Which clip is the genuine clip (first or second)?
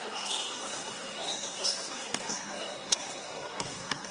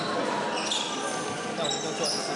second